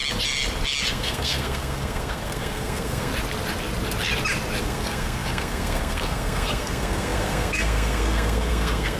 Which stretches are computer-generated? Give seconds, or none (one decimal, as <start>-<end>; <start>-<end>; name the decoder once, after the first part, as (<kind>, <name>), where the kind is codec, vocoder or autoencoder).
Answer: 0.9-3.1 (codec, SNAC); 4.6-9.0